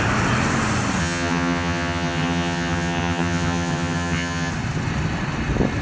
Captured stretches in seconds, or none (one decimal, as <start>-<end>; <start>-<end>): 0.0-1.0; 4.5-5.8